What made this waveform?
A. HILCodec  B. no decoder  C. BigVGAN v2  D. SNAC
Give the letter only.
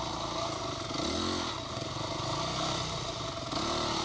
B